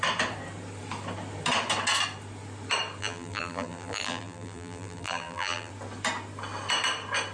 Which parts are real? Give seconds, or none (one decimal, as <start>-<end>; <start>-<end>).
0.0-3.0; 5.7-7.3